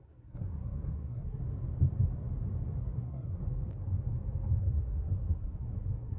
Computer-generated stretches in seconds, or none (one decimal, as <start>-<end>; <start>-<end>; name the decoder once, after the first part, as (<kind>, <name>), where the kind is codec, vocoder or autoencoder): 0.0-1.4 (codec, SNAC); 2.8-3.4; 4.6-6.2